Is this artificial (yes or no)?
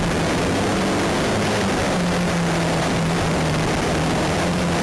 yes